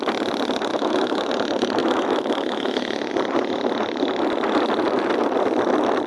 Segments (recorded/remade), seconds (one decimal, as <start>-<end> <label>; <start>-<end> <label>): 0.0-0.7 recorded; 0.7-1.3 remade; 1.3-1.8 recorded; 1.8-3.1 remade; 3.1-6.1 recorded